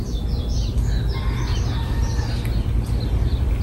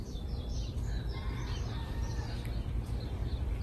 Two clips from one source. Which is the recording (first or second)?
first